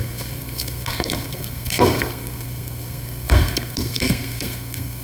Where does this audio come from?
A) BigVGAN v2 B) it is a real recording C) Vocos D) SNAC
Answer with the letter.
D